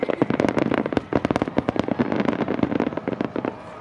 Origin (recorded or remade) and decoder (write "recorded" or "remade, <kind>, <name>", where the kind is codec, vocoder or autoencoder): recorded